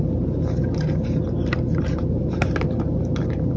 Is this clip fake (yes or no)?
yes